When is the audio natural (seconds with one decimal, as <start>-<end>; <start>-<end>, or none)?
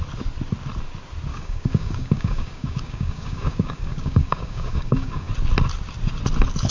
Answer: 0.0-1.3; 5.3-6.7